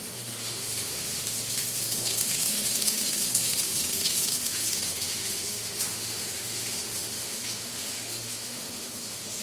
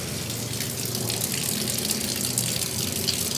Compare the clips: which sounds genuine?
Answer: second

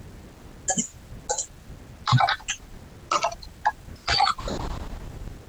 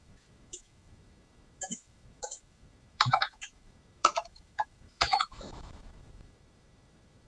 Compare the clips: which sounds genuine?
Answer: first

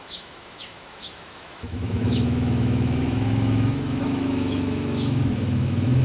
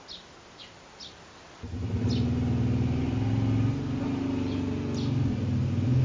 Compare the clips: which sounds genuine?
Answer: second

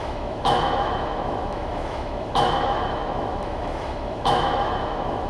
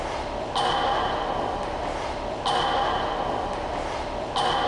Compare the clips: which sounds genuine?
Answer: second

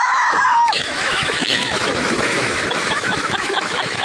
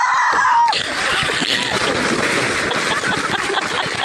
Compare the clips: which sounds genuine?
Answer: second